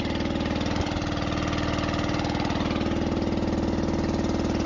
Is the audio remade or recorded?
recorded